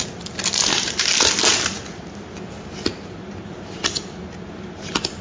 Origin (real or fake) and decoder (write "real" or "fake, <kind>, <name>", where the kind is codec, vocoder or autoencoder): real